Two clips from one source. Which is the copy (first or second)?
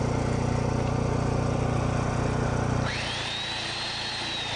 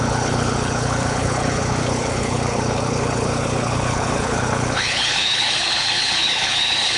second